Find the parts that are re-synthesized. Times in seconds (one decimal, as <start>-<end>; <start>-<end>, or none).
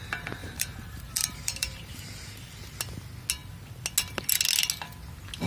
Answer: 0.4-2.8